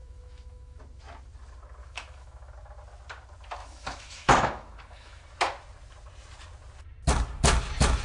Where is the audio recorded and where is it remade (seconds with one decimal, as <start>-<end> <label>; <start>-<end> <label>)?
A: 0.0-0.8 remade; 0.8-1.8 recorded; 1.8-2.5 remade; 2.5-3.6 recorded; 3.6-5.2 remade; 5.2-8.0 recorded